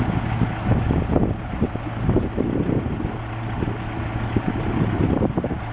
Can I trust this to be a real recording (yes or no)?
yes